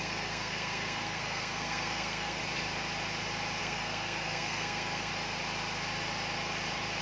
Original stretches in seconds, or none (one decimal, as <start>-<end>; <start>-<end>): 2.4-3.6; 5.1-7.0